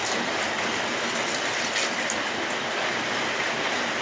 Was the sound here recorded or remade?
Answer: recorded